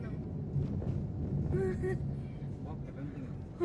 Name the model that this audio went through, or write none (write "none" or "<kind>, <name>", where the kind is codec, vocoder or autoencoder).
none